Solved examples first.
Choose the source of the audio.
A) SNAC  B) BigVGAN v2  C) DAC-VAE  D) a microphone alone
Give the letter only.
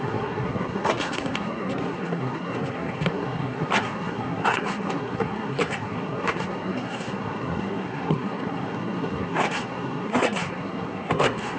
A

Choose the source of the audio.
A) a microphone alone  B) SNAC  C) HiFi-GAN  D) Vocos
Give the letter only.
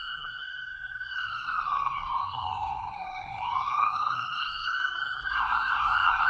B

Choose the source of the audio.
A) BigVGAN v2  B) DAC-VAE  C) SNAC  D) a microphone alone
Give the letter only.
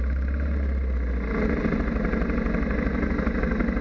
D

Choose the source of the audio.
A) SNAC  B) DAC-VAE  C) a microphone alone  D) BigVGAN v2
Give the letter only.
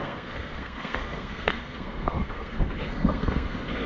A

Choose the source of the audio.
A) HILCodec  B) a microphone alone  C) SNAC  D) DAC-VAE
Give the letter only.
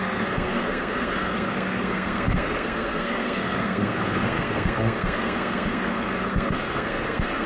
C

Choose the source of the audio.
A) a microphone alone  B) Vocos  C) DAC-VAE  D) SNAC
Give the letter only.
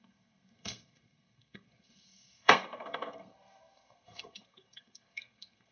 D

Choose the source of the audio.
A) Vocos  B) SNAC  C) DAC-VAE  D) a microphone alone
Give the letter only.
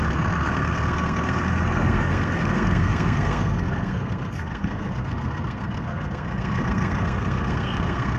B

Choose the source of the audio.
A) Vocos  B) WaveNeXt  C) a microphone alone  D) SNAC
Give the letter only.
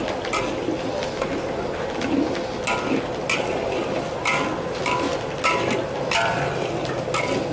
C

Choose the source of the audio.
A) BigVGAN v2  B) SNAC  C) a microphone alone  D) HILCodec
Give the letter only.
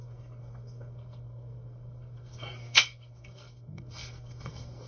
B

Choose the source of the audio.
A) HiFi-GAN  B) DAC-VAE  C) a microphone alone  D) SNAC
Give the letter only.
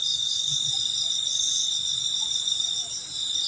C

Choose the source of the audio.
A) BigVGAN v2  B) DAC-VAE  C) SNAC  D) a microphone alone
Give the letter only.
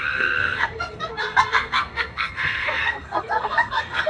C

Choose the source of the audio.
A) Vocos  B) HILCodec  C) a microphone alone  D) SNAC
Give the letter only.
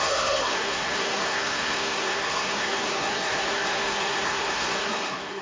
D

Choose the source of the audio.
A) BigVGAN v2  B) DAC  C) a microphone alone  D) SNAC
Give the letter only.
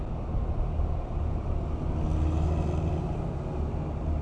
C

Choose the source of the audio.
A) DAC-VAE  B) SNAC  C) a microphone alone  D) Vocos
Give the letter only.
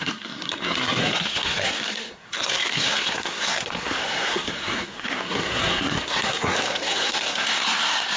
B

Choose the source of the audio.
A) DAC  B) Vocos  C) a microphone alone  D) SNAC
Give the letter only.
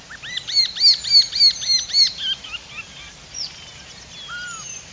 C